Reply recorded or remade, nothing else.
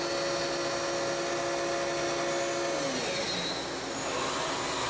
recorded